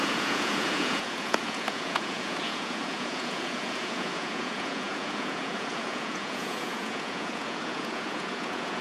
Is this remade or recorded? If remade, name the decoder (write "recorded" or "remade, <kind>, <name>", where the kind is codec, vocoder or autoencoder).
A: remade, vocoder, Vocos